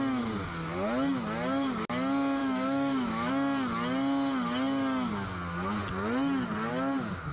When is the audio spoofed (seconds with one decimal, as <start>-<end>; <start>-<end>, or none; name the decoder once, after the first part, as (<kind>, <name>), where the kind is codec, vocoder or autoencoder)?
2.4-3.3 (autoencoder, DAC-VAE)